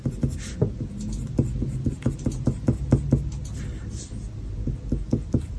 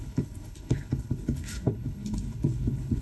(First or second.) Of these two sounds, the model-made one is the second